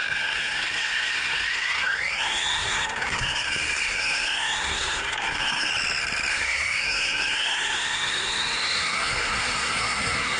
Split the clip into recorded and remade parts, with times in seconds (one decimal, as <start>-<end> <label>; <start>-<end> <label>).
0.0-5.7 remade; 5.7-6.3 recorded; 6.3-10.4 remade